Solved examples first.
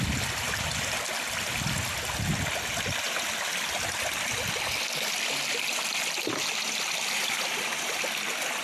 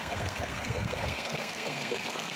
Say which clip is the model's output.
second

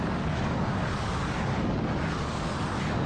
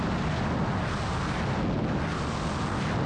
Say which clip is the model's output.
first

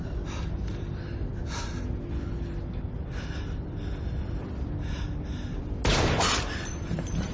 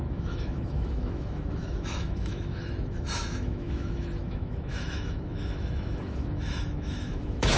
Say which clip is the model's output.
second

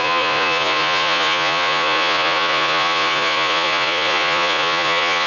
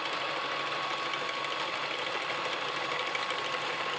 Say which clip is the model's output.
first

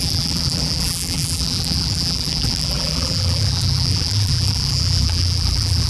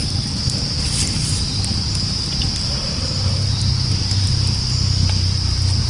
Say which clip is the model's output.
first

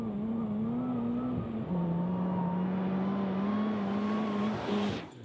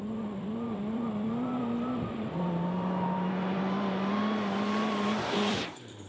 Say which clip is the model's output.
second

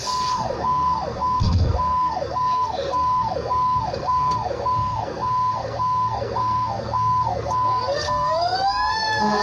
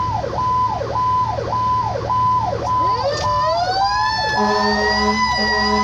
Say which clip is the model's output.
first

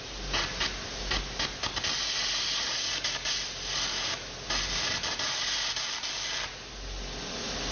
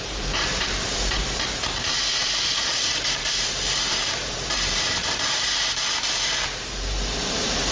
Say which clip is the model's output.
second